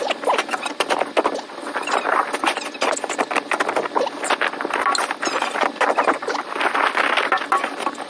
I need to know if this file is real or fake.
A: real